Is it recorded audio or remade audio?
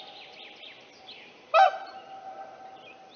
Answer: recorded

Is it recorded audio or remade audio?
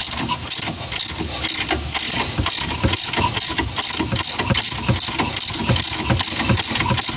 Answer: recorded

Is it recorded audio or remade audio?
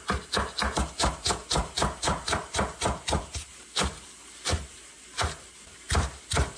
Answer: remade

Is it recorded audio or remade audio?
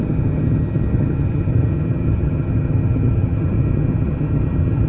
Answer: remade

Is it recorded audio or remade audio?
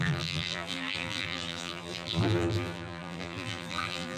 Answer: remade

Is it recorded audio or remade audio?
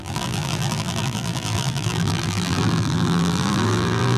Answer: remade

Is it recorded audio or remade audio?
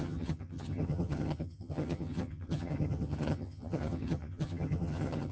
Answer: remade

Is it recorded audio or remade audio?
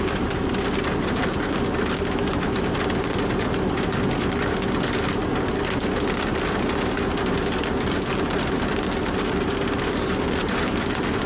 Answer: recorded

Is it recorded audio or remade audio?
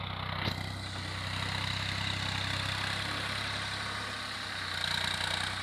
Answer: recorded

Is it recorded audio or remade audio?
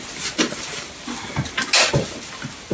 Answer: recorded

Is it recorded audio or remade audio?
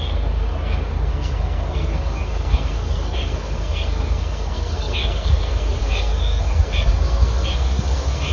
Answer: remade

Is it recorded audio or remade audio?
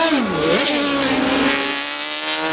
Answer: recorded